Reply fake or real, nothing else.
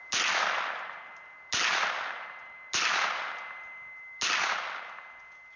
real